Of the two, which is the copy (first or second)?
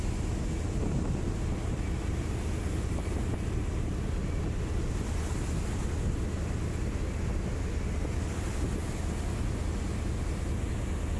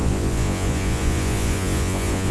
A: second